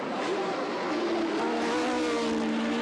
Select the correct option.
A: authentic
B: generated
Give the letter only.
A